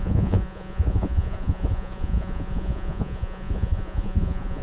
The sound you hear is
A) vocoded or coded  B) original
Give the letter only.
A